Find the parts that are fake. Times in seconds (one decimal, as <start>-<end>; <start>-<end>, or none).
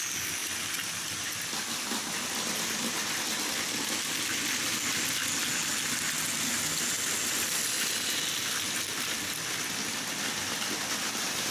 none